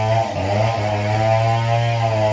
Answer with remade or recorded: recorded